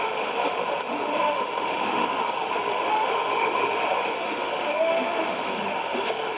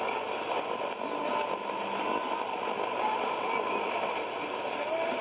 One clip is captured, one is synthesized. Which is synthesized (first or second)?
first